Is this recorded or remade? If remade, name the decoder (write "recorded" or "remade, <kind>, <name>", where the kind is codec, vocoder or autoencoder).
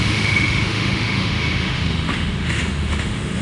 remade, autoencoder, DAC-VAE